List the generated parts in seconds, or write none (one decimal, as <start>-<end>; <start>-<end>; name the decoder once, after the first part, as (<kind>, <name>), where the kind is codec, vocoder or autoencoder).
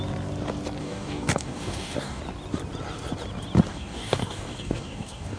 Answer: 0.8-2.2 (codec, DAC); 3.7-5.4